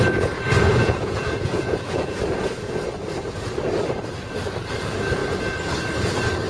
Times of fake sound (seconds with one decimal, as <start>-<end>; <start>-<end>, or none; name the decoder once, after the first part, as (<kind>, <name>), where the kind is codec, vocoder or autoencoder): 0.7-2.2 (vocoder, Vocos)